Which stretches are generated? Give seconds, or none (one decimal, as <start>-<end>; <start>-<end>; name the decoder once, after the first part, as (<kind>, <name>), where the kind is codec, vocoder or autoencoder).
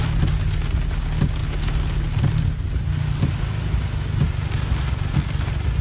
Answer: none